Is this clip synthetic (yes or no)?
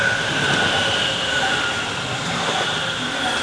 no